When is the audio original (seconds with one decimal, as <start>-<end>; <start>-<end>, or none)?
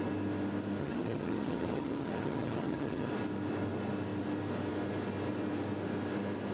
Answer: 0.0-0.8; 3.1-6.5